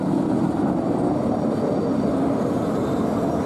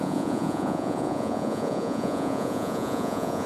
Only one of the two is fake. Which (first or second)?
second